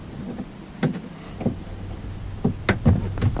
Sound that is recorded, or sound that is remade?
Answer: recorded